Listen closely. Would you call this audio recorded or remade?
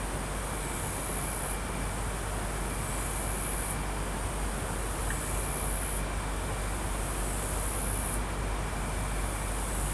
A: recorded